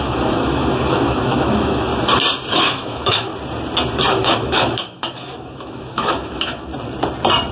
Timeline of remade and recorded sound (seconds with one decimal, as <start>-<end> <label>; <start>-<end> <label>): 0.0-1.9 remade; 1.9-2.5 recorded; 2.5-3.3 remade; 3.3-4.1 recorded; 4.1-6.7 remade; 6.7-7.5 recorded